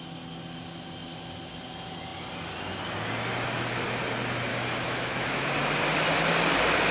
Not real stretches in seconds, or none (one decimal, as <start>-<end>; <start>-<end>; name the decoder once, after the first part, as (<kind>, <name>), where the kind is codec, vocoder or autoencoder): 4.5-5.5 (autoencoder, DAC-VAE)